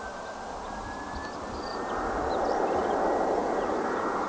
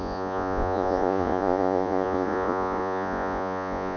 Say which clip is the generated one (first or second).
second